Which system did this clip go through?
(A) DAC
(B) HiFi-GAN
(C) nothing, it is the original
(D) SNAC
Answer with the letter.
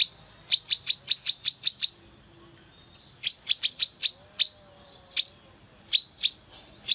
C